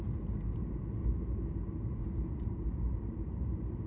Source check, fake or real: fake